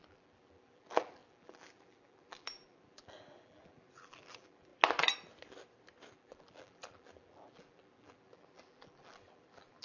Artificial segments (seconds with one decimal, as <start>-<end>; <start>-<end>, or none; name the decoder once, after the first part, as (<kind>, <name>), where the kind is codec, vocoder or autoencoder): 0.0-4.7 (vocoder, BigVGAN v2); 6.1-9.8

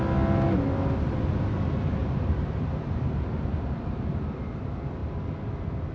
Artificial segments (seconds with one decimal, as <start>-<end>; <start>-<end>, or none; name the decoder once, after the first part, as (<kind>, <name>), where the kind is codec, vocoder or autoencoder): 2.0-4.4 (vocoder, BigVGAN v2)

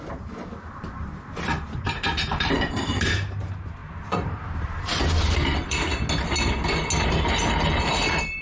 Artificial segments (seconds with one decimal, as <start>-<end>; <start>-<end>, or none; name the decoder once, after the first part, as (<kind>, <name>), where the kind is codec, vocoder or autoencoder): 0.0-5.9 (vocoder, BigVGAN v2); 7.1-8.4

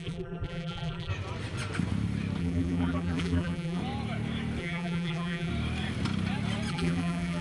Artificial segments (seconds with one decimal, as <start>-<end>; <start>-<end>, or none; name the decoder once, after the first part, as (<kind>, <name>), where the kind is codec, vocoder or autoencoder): 0.0-1.1 (vocoder, BigVGAN v2); 2.4-3.8; 4.6-5.5; 6.7-7.4

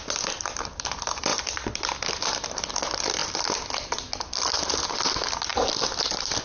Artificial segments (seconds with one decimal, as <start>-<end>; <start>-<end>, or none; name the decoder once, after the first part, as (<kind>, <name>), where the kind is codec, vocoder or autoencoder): 1.3-1.8 (vocoder, BigVGAN v2)